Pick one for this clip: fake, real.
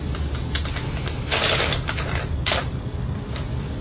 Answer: real